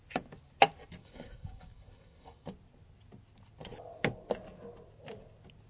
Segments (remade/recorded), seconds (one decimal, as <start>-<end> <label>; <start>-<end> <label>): 0.0-1.0 recorded; 1.0-2.5 remade; 2.5-5.7 recorded